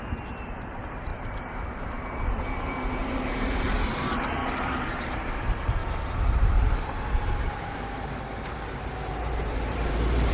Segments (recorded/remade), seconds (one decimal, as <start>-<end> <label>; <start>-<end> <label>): 0.0-4.4 remade; 4.4-5.0 recorded; 5.0-10.3 remade